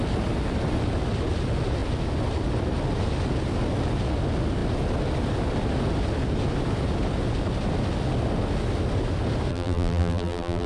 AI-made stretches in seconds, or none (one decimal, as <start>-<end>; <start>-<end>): 9.5-10.7